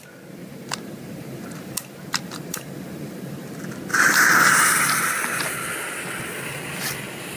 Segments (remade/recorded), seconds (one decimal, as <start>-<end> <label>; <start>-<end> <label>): 0.0-0.4 recorded; 0.4-3.5 remade; 3.5-7.4 recorded